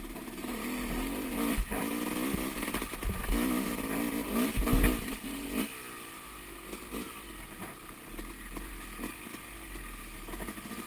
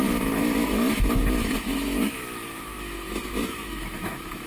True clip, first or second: first